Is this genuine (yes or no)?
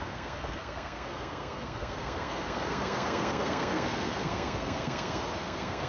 no